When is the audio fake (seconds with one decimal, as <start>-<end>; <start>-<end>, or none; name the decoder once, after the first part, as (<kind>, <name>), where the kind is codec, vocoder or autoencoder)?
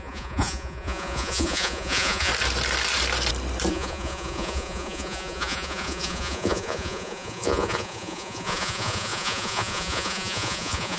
0.0-2.3 (vocoder, Vocos); 3.7-11.0